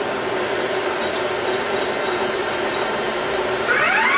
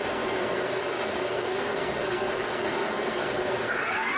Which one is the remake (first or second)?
second